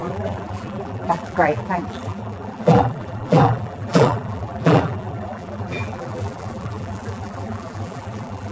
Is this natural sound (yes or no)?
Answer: no